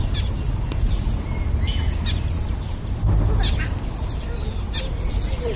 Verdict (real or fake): real